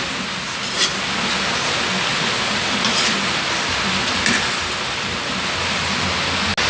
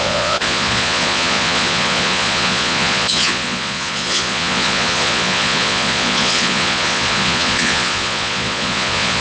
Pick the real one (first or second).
first